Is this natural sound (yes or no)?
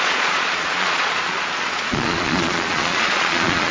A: no